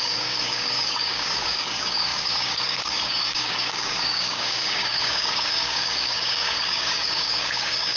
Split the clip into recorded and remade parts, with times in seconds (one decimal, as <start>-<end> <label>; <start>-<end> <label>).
0.0-8.0 remade